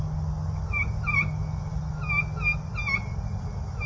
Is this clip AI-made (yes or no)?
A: no